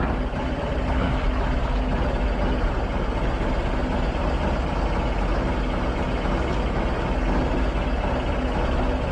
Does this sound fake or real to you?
real